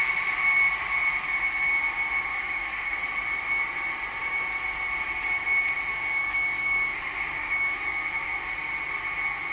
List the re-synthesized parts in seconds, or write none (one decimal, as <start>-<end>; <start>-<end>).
2.3-3.0; 5.9-8.5

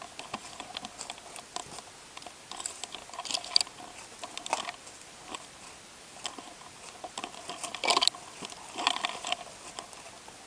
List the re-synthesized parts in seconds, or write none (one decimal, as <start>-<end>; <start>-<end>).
none